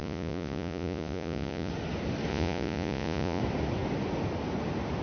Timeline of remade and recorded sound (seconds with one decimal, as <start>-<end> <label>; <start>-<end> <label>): 0.0-1.7 remade; 1.7-2.3 recorded; 2.3-3.4 remade; 3.4-5.0 recorded

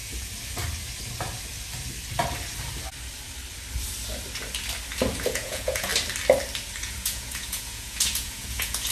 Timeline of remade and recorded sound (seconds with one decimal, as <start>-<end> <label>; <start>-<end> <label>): 0.0-5.2 recorded; 5.2-5.9 remade; 5.9-6.8 recorded; 6.8-8.9 remade

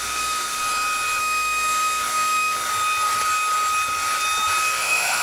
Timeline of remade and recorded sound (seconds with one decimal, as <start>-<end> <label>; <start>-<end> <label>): 0.0-0.6 remade; 0.6-1.2 recorded; 1.2-2.7 remade; 2.7-4.6 recorded; 4.6-5.2 remade

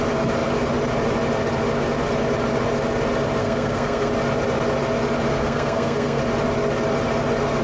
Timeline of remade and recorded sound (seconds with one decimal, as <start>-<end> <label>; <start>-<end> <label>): 0.0-3.4 recorded; 3.4-4.1 remade; 4.1-5.3 recorded; 5.3-6.2 remade; 6.2-7.6 recorded

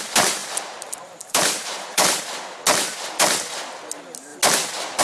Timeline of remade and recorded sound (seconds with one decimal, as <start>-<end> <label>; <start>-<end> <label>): 0.0-0.4 recorded; 0.4-2.2 remade; 2.2-5.0 recorded

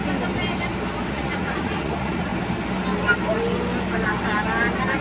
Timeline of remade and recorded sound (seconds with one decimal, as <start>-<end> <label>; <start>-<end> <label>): 0.0-1.1 recorded; 1.1-2.3 remade; 2.3-5.0 recorded

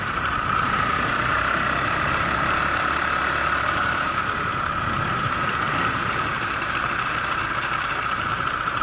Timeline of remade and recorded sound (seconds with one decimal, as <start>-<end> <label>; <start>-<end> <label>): 0.0-8.8 remade

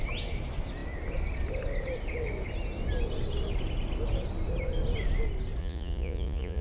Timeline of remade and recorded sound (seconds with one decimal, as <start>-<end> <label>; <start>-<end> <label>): 0.0-5.6 recorded; 5.6-6.6 remade